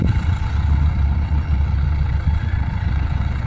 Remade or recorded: remade